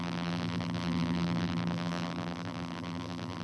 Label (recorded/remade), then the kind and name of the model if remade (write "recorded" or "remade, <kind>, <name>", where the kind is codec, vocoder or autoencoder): remade, vocoder, BigVGAN v2